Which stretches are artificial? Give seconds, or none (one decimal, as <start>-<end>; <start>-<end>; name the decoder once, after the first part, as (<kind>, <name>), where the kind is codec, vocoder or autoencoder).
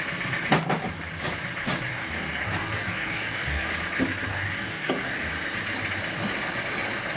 1.9-3.7 (codec, DAC); 4.3-5.3